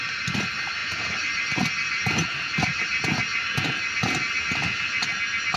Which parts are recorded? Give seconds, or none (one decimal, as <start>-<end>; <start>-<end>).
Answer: 0.0-5.6